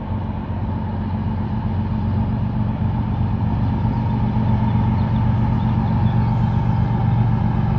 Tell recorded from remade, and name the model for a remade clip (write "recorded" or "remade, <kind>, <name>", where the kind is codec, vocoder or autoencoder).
recorded